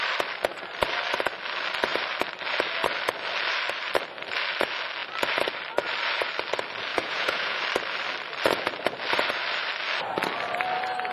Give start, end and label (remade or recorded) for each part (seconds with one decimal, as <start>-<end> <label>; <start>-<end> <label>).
0.0-6.9 recorded; 6.9-7.6 remade; 7.6-11.1 recorded